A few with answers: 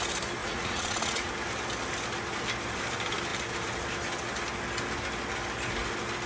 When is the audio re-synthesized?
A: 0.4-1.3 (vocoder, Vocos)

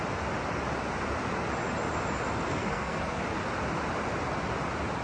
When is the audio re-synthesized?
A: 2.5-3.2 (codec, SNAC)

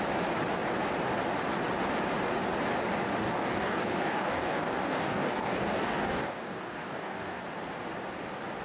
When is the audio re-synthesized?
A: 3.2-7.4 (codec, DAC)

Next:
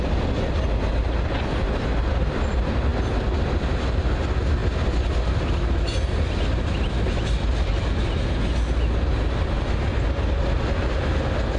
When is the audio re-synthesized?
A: none